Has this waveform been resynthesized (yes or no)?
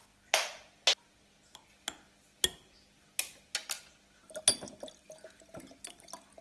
no